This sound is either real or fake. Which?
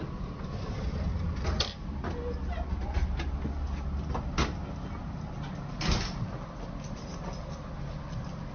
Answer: real